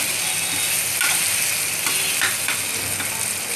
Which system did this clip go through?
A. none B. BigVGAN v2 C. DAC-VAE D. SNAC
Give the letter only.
A